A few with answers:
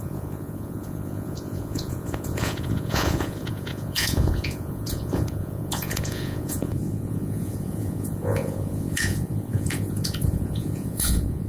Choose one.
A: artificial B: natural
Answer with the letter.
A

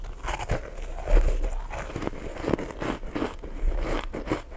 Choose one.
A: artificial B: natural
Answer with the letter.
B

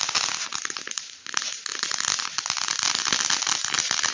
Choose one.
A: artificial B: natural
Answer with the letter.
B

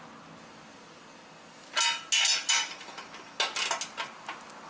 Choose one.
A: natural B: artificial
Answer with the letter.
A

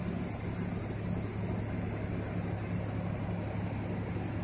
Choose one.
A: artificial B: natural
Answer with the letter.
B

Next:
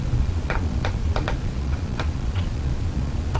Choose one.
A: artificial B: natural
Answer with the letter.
A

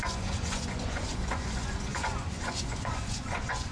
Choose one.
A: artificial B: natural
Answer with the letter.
A